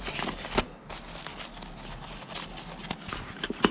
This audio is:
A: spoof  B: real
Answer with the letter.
B